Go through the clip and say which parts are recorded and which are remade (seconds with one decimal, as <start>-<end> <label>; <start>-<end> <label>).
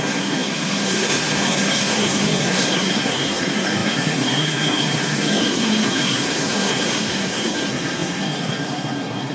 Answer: 0.0-9.3 remade